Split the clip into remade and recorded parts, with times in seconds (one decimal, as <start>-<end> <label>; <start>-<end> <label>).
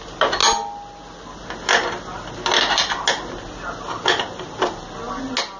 0.0-5.6 recorded